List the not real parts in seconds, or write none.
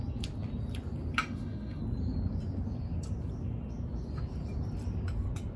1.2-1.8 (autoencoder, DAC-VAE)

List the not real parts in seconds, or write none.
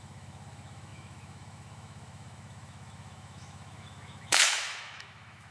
0.0-5.5 (autoencoder, DAC-VAE)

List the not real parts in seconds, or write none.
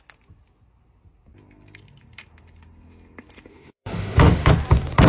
3.5-4.5 (autoencoder, DAC-VAE)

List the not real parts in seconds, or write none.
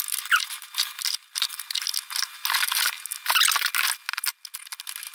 none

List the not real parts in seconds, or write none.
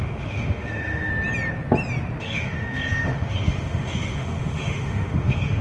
0.0-1.1 (autoencoder, DAC-VAE); 2.2-5.6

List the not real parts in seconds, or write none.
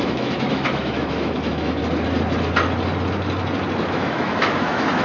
0.0-1.8 (autoencoder, DAC-VAE); 3.9-5.0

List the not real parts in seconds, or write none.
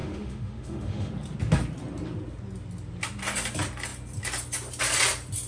0.0-1.1 (autoencoder, DAC-VAE)